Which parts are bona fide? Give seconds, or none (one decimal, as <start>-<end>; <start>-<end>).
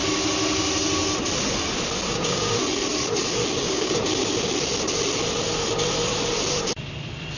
0.0-2.1; 2.6-3.6; 4.0-7.4